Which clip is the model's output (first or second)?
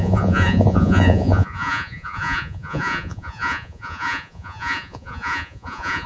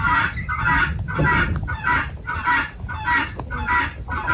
first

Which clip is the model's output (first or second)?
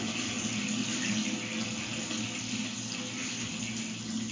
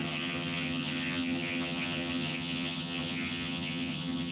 second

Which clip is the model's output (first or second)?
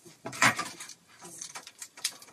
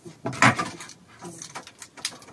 first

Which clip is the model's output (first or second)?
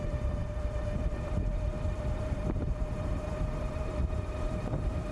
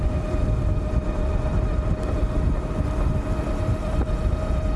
first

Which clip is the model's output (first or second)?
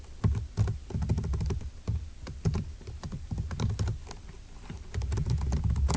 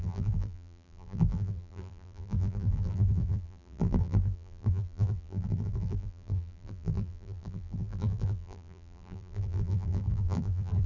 second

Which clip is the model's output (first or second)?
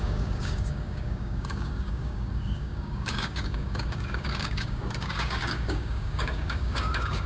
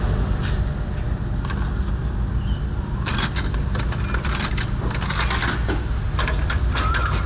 first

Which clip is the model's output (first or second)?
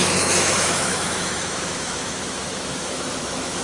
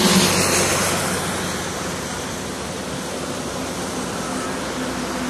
first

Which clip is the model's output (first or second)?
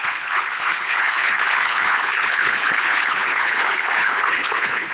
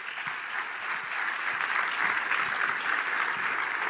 first